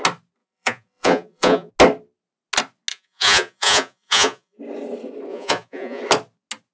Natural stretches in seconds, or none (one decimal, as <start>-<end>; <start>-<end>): 0.0-0.4; 1.7-2.9; 4.6-5.3; 6.0-6.7